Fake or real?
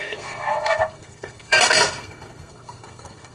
fake